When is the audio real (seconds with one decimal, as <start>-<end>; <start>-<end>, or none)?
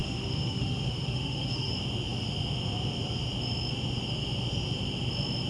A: 1.7-5.5